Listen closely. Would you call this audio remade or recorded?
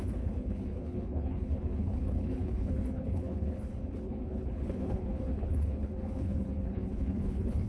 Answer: remade